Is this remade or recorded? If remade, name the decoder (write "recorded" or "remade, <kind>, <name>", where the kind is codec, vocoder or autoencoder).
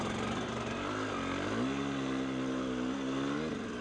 recorded